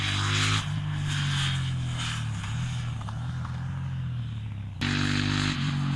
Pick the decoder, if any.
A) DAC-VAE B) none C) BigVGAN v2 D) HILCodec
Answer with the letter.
B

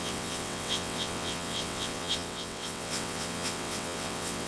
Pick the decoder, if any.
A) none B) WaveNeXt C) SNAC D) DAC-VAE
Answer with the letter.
B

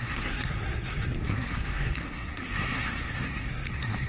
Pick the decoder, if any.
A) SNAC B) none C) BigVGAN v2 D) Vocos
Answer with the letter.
A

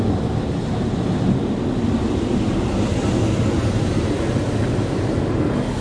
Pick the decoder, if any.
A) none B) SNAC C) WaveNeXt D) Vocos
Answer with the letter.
A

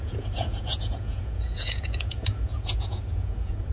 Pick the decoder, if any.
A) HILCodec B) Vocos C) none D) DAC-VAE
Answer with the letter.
B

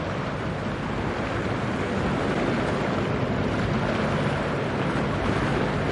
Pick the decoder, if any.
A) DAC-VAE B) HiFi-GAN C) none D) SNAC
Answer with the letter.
C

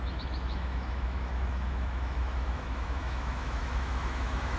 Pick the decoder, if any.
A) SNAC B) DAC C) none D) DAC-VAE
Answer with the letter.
D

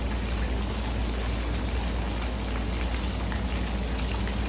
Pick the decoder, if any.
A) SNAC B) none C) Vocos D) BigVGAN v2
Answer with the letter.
B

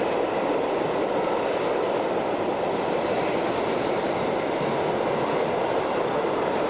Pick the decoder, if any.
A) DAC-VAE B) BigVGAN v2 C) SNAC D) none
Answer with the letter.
B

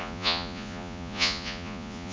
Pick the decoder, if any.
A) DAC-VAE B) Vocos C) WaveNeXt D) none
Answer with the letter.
B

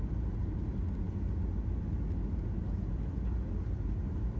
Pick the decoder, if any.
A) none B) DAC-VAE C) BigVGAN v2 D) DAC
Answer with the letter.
A